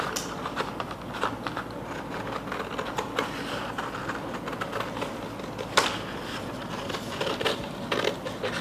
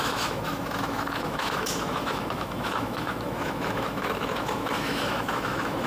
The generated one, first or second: second